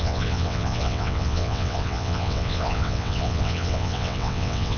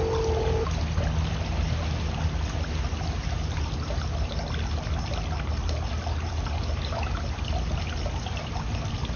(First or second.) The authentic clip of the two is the second